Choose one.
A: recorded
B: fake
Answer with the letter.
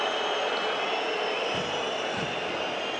A